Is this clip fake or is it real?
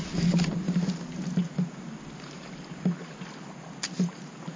real